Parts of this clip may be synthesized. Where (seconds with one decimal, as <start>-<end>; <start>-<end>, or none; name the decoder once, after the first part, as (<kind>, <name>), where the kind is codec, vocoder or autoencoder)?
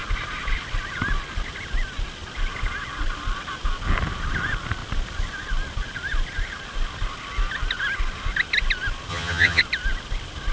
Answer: 9.1-9.6 (vocoder, HiFi-GAN)